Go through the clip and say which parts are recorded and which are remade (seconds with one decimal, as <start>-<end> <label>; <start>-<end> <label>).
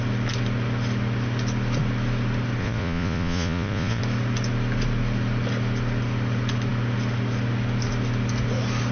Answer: 0.0-2.6 recorded; 2.6-4.0 remade; 4.0-8.9 recorded